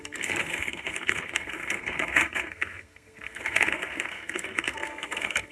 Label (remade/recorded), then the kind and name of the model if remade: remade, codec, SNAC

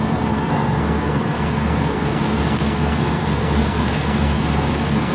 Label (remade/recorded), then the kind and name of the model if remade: remade, codec, SNAC